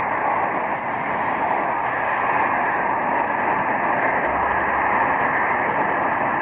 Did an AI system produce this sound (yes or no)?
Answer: no